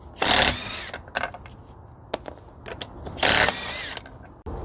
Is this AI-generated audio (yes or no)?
no